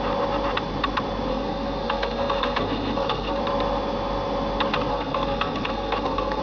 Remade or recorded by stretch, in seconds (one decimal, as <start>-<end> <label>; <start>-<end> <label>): 0.0-1.3 recorded; 1.3-3.4 remade; 3.4-4.9 recorded; 4.9-6.4 remade

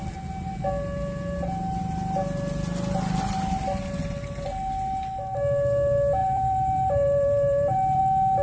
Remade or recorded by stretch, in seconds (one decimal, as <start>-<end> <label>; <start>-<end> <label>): 0.0-6.2 recorded; 6.2-8.0 remade; 8.0-8.4 recorded

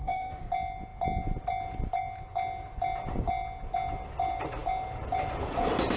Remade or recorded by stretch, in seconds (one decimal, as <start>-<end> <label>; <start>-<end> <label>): 0.0-0.5 remade; 0.5-6.0 recorded